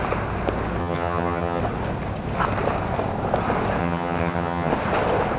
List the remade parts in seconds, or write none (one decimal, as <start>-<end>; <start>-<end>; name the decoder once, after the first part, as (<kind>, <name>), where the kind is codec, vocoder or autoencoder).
0.8-1.6 (vocoder, HiFi-GAN); 3.8-4.7